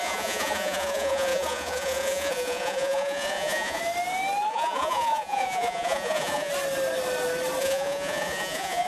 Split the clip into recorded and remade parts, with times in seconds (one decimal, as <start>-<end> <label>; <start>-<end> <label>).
0.0-3.8 remade; 3.8-4.5 recorded; 4.5-6.5 remade; 6.5-7.6 recorded; 7.6-8.9 remade